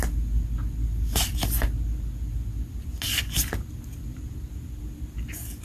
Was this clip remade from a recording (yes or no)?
no